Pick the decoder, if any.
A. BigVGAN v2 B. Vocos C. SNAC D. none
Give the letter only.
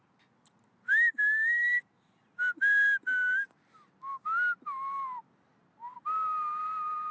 D